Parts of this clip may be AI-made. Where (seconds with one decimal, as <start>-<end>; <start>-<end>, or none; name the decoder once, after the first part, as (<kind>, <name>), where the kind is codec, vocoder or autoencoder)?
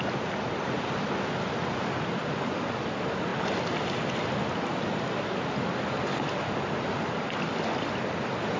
none